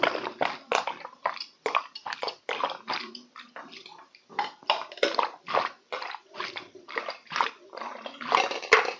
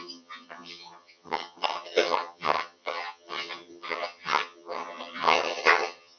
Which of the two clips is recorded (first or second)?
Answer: first